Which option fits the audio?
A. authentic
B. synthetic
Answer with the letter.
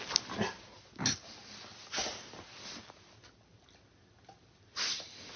A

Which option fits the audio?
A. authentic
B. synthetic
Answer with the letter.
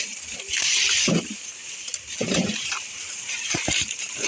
B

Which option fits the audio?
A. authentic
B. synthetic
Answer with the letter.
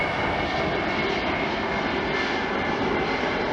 A